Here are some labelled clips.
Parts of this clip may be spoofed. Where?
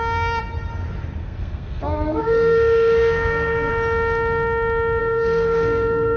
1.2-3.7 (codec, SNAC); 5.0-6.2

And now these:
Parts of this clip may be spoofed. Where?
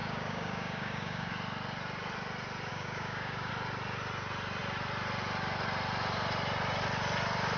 0.0-1.3 (codec, DAC); 2.7-3.5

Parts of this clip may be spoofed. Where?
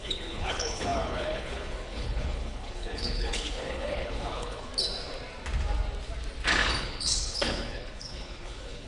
0.0-4.7 (codec, HILCodec); 6.8-8.9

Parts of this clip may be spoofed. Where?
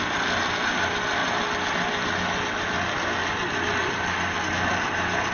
none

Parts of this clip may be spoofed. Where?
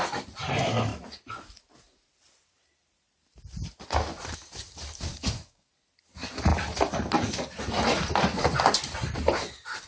5.1-5.7 (codec, DAC)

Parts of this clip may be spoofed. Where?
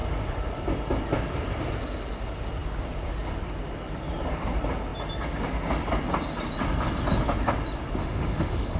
8.0-8.8 (autoencoder, DAC-VAE)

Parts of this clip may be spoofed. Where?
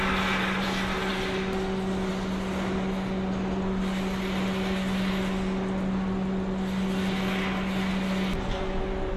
none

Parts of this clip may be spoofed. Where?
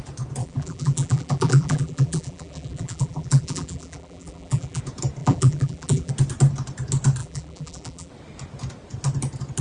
0.4-4.8 (vocoder, BigVGAN v2); 5.2-6.1; 7.2-8.1